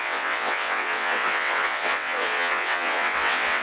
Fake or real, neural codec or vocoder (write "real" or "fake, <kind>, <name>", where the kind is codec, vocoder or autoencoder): fake, vocoder, WaveNeXt